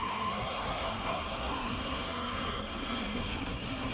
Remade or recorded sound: remade